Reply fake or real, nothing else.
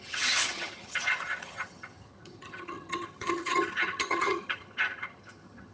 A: fake